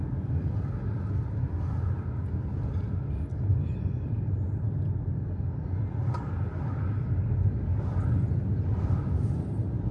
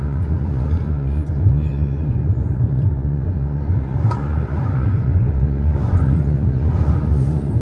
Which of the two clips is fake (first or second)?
second